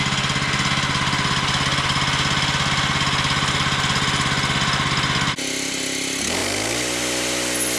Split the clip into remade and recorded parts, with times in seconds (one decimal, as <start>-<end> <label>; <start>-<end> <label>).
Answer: 0.0-7.8 recorded